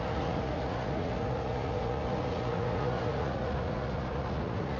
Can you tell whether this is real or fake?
fake